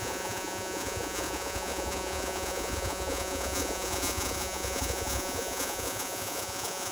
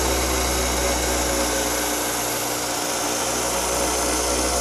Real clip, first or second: second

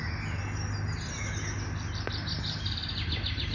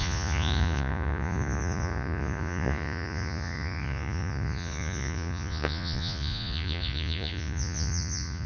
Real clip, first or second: first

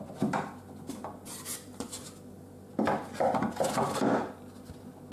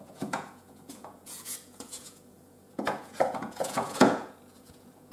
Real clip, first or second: first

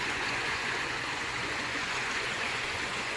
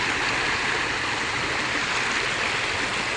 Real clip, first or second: second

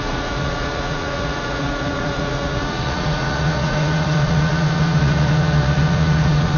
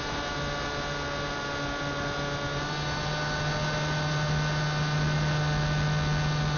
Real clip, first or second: second